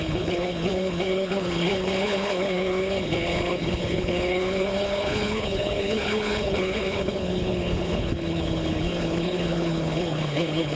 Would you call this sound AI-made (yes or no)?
yes